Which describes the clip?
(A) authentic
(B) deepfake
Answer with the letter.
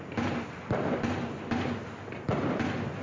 A